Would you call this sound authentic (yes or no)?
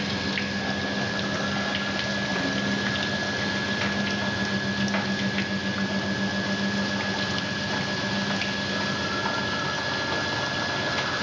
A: yes